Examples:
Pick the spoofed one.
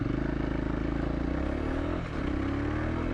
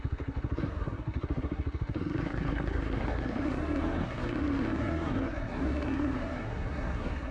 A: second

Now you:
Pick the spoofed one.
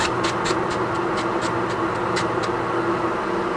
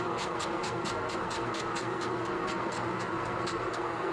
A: second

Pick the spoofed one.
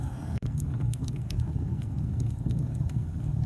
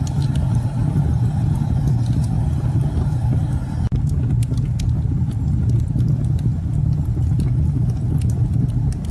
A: first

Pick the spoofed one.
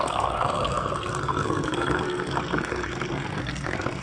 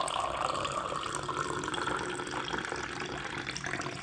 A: first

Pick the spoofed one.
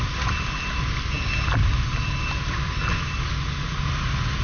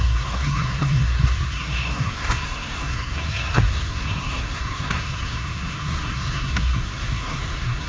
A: second